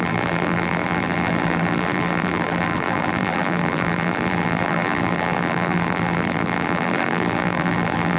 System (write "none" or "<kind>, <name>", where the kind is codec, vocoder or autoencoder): vocoder, BigVGAN v2